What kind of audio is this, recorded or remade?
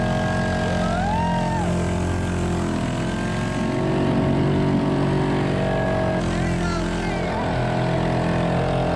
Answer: recorded